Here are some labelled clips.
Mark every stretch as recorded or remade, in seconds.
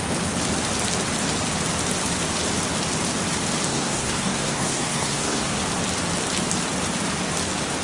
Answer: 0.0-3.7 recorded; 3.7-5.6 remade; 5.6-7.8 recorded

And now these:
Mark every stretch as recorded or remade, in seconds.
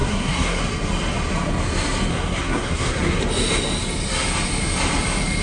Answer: 0.0-0.6 remade; 0.6-2.1 recorded; 2.1-3.2 remade; 3.2-5.4 recorded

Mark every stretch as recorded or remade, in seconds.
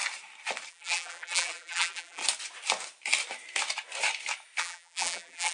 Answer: 0.0-0.7 recorded; 0.7-2.2 remade; 2.2-4.6 recorded; 4.6-5.5 remade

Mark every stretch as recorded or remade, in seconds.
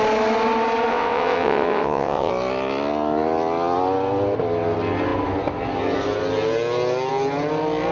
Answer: 0.0-0.9 recorded; 0.9-2.3 remade; 2.3-7.9 recorded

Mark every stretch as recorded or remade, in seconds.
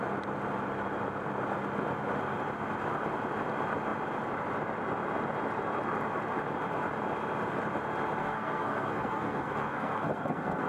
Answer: 0.0-8.2 recorded; 8.2-10.7 remade